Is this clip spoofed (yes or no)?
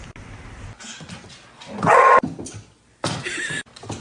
no